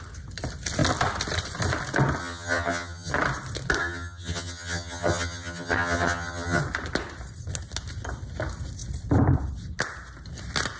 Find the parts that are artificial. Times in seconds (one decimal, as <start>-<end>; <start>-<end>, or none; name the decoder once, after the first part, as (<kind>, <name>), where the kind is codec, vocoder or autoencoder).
2.2-3.1 (vocoder, HiFi-GAN); 3.8-6.6